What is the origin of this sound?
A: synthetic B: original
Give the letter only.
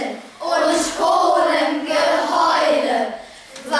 B